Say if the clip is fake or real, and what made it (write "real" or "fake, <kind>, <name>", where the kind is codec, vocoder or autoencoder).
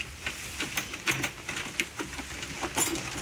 real